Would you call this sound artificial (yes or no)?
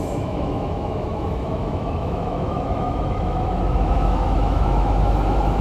yes